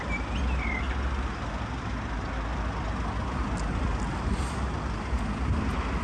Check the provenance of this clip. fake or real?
real